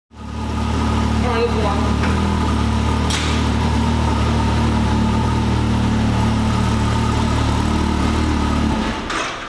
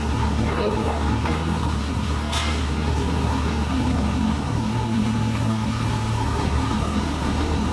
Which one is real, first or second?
first